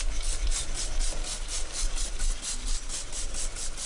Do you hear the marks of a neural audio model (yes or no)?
no